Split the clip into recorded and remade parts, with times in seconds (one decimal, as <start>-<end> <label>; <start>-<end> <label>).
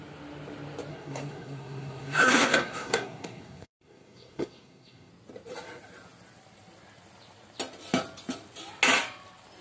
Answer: 0.0-0.9 recorded; 0.9-5.1 remade; 5.1-9.6 recorded